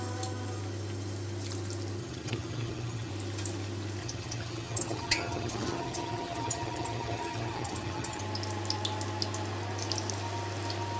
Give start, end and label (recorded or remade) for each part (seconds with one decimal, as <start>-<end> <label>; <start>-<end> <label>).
0.0-2.0 recorded; 2.0-3.1 remade; 3.1-4.0 recorded; 4.0-8.2 remade; 8.2-11.0 recorded